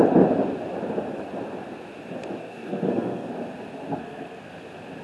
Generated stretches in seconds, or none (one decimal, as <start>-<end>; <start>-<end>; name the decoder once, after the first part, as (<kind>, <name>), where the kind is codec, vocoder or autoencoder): 2.4-3.3 (codec, SNAC); 3.9-4.5